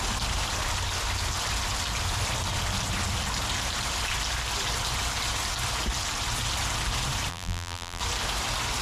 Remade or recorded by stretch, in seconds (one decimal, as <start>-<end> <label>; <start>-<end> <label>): 0.0-7.3 recorded; 7.3-8.0 remade; 8.0-8.8 recorded